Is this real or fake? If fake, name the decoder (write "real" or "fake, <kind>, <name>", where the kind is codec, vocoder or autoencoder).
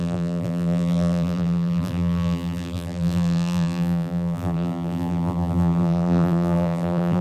fake, vocoder, BigVGAN v2